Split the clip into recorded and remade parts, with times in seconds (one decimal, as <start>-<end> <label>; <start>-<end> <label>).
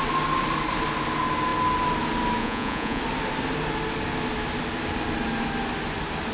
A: 0.0-2.4 recorded; 2.4-3.0 remade; 3.0-6.3 recorded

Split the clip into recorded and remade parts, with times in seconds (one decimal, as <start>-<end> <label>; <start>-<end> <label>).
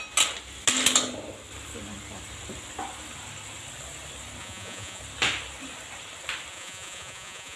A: 0.0-4.4 recorded; 4.4-5.0 remade; 5.0-6.5 recorded; 6.5-7.6 remade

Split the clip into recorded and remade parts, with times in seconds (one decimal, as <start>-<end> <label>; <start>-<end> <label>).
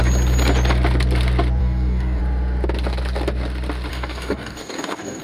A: 0.0-1.6 recorded; 1.6-2.2 remade; 2.2-3.9 recorded; 3.9-5.2 remade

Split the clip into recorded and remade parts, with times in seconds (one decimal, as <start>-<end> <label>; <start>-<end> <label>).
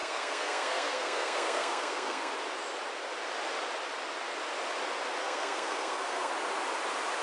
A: 0.0-2.3 remade; 2.3-5.2 recorded; 5.2-6.3 remade; 6.3-7.2 recorded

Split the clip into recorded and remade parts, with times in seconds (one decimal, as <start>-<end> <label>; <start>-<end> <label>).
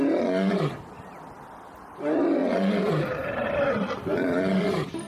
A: 0.0-5.1 remade